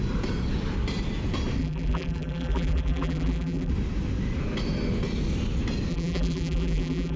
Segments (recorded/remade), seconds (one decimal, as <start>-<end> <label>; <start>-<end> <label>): 0.0-1.6 recorded; 1.6-3.7 remade; 3.7-5.9 recorded; 5.9-7.2 remade